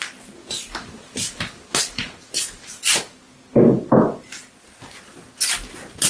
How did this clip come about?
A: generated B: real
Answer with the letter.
B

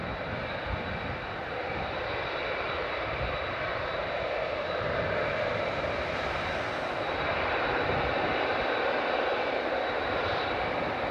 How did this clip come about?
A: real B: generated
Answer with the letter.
B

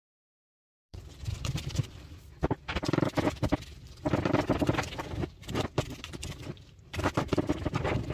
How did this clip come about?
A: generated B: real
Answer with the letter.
A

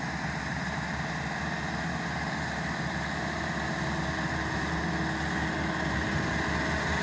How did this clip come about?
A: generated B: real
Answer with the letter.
B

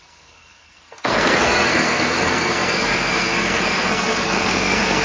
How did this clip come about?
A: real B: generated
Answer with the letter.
B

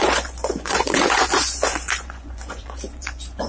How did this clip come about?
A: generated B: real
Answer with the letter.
A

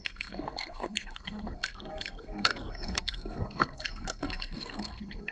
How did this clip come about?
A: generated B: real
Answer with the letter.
A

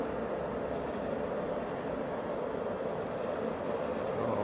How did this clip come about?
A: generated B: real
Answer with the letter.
B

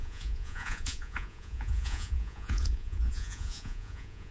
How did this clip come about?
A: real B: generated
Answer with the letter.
B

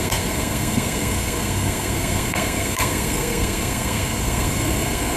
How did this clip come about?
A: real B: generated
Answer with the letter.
B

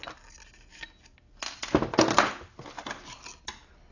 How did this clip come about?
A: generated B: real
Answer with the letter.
B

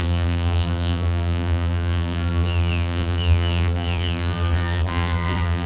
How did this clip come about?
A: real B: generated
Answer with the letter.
B